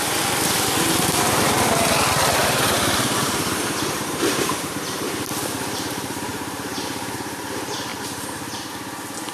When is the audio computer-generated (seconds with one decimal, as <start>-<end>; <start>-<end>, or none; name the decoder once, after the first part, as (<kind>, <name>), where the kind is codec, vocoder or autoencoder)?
2.4-5.3 (vocoder, BigVGAN v2); 6.3-7.4; 7.9-8.7

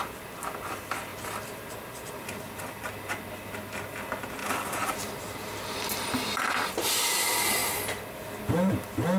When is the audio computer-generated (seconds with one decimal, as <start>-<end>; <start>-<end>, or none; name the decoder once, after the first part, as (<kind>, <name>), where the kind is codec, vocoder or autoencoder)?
1.1-2.9 (vocoder, BigVGAN v2); 4.4-6.7; 7.6-8.5

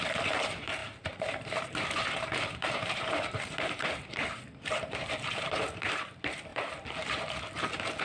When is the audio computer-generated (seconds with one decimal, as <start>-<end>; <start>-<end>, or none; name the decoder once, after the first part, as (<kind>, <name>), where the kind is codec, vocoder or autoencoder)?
0.0-6.5 (vocoder, BigVGAN v2)

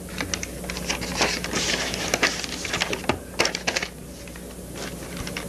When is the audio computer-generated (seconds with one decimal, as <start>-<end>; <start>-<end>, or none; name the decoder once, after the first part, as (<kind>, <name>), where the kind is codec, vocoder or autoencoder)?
none

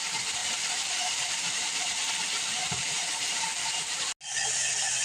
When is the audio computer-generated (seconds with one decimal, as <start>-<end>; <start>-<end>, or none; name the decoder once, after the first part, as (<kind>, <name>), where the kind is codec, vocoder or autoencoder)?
0.4-2.1 (vocoder, BigVGAN v2); 2.6-4.1

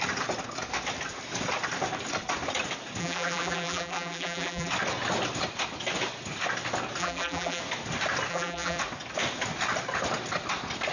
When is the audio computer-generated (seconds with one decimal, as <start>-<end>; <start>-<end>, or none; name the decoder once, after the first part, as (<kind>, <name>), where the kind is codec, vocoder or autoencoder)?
3.0-4.7 (vocoder, BigVGAN v2); 7.0-7.6; 8.3-8.8

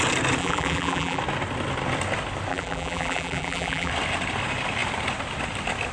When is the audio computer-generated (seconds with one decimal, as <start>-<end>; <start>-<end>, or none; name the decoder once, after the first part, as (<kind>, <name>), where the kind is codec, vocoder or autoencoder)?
0.4-1.2 (vocoder, BigVGAN v2); 2.5-3.9